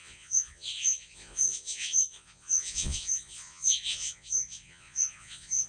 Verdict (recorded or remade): remade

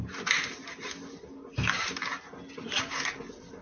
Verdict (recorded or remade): recorded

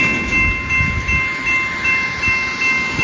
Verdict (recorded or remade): recorded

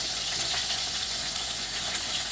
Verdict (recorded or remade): remade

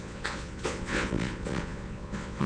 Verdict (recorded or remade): remade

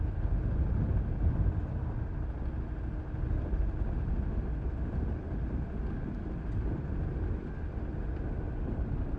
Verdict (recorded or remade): recorded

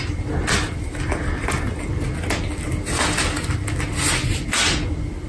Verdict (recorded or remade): recorded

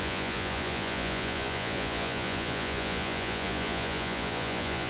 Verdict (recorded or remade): remade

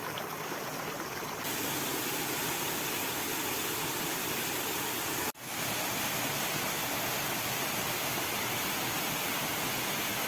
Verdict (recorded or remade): recorded